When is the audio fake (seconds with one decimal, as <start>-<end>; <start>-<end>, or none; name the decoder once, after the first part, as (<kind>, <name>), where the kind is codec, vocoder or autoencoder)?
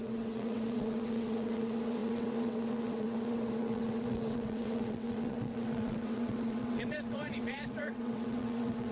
0.0-8.9 (vocoder, WaveNeXt)